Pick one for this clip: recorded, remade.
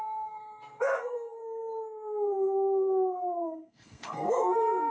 remade